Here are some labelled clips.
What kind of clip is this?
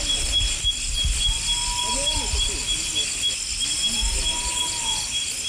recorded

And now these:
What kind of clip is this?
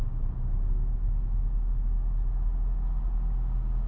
recorded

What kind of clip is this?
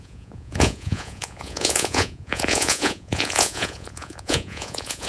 remade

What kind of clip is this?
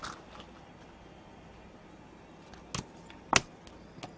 recorded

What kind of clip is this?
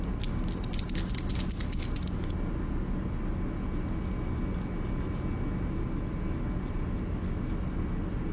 recorded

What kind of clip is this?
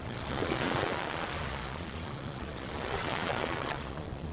remade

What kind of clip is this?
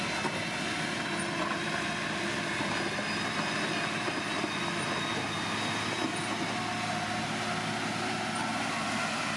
recorded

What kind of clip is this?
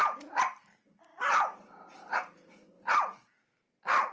recorded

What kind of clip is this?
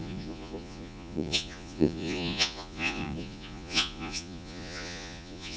remade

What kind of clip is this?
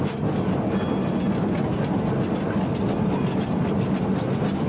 recorded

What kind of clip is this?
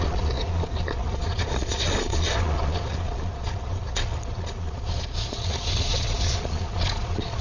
remade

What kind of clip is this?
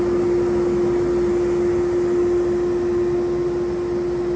recorded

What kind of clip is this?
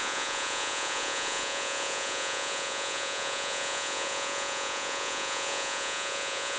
remade